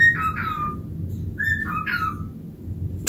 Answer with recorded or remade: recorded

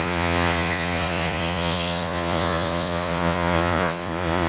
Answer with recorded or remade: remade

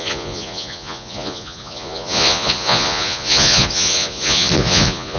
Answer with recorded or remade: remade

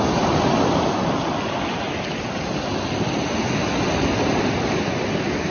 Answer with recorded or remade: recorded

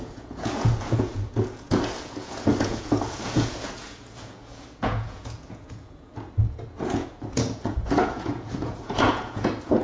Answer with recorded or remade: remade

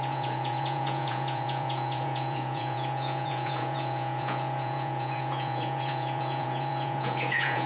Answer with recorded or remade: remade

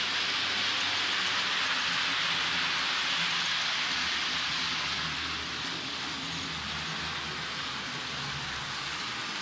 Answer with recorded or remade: recorded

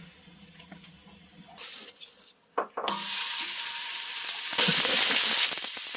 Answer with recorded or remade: recorded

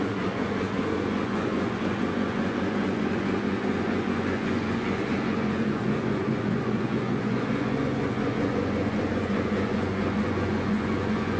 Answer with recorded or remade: remade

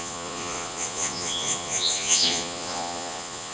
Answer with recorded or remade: remade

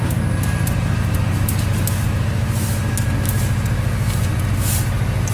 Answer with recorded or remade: recorded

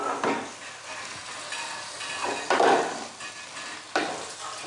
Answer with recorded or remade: recorded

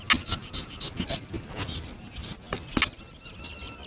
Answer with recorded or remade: recorded